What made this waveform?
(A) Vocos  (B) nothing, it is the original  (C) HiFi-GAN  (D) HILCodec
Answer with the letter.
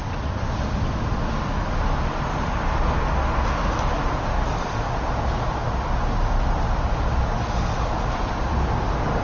B